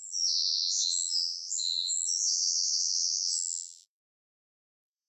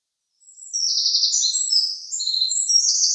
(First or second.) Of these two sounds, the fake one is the first